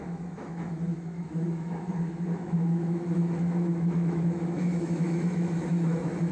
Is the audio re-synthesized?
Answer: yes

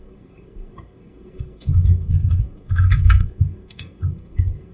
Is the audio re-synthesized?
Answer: yes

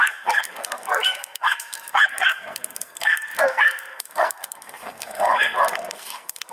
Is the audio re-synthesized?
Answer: yes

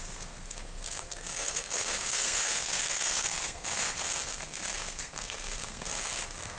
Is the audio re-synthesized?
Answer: yes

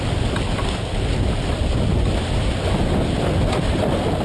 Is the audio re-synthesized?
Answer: no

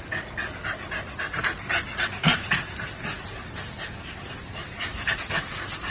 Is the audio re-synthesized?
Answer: no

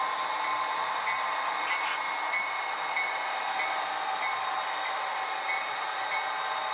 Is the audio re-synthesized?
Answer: no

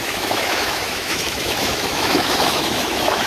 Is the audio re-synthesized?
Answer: yes